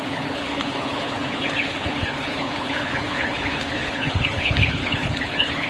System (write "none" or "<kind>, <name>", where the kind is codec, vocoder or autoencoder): codec, HILCodec